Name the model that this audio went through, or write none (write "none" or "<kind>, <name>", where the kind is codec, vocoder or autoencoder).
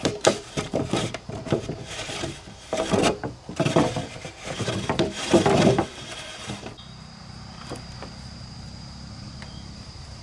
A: vocoder, BigVGAN v2